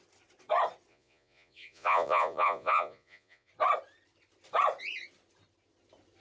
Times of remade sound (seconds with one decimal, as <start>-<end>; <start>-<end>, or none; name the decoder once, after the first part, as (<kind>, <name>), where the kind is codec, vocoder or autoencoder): 0.9-3.5 (vocoder, Vocos)